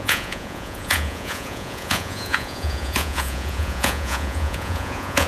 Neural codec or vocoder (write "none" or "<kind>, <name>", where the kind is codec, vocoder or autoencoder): vocoder, Vocos